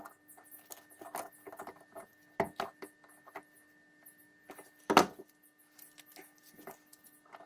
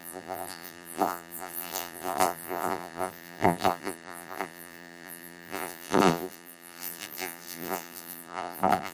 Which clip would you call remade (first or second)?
second